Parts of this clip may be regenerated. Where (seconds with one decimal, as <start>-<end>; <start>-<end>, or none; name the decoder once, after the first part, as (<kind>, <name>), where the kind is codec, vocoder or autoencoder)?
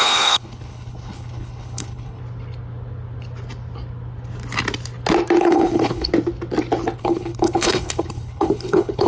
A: 0.0-2.2 (codec, HILCodec); 5.4-6.1; 7.0-9.1